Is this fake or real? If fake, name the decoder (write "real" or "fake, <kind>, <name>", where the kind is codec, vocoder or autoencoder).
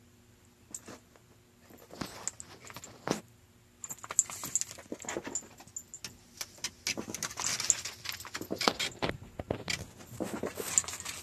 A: real